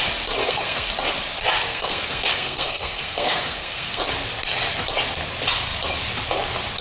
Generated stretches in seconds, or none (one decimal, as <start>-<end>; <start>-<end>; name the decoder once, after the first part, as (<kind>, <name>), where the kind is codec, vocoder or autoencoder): 0.4-0.9 (codec, SNAC); 1.7-4.0